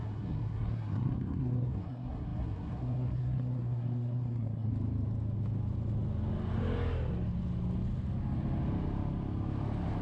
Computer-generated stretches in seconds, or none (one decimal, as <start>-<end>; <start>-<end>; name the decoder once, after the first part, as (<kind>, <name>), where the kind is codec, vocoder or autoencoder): 0.0-4.7 (codec, SNAC)

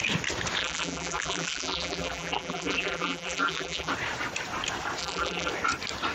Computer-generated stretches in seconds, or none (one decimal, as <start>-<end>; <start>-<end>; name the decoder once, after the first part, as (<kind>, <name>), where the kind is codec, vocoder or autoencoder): 0.6-3.9 (vocoder, BigVGAN v2); 5.0-5.5

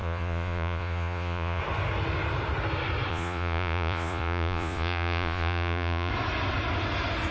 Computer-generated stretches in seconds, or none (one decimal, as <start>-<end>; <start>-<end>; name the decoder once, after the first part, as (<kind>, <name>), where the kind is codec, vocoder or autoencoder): 0.0-1.6 (vocoder, Vocos); 3.1-6.1

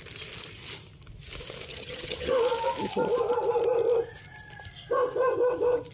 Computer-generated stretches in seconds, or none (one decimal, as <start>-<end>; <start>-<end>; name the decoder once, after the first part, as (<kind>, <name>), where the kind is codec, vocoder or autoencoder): 1.7-2.3 (vocoder, HiFi-GAN)